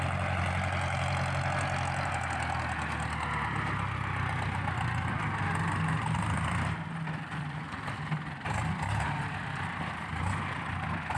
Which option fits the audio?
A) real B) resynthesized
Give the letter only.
A